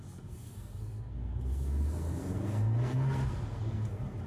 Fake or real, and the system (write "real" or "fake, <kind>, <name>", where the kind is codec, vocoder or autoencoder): fake, codec, SNAC